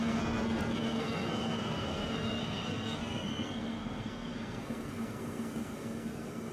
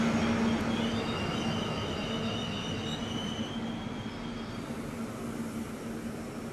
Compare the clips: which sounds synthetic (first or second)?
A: first